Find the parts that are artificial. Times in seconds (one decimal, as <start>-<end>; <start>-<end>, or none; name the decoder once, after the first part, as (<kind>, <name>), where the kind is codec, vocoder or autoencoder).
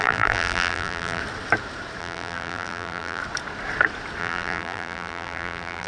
0.0-1.2 (vocoder, BigVGAN v2); 2.0-3.2; 4.2-5.9